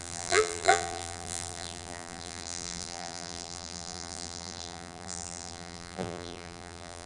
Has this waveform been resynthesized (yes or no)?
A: yes